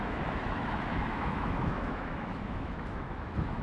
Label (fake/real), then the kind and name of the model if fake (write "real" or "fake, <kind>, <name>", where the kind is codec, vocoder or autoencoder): fake, autoencoder, DAC-VAE